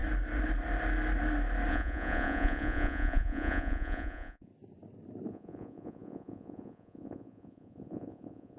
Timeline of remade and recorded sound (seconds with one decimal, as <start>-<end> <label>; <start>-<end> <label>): 0.0-1.7 recorded; 1.7-4.5 remade; 4.5-5.3 recorded; 5.3-8.6 remade